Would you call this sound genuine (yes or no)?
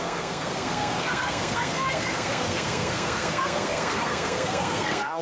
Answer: no